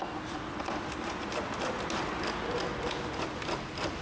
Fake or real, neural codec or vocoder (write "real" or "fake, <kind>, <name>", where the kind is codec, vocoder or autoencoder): real